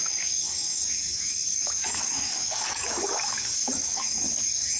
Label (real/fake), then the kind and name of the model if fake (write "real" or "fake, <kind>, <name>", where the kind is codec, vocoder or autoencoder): fake, codec, DAC